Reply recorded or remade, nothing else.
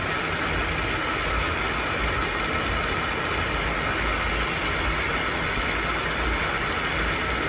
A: recorded